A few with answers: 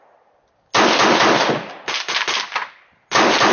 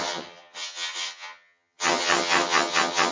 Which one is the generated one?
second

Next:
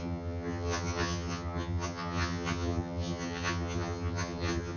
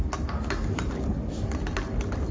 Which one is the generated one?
first